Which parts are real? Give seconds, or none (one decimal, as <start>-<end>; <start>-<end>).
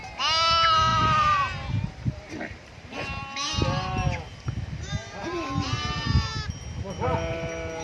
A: 0.0-0.9; 2.3-7.8